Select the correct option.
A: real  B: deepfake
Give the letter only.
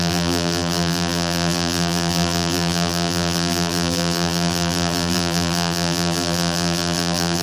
B